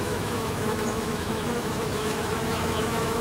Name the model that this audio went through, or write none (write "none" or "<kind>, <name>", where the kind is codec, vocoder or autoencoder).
autoencoder, DAC-VAE